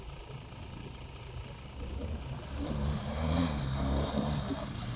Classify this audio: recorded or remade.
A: recorded